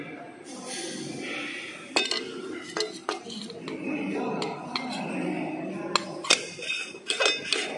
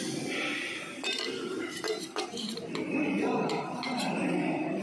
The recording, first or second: first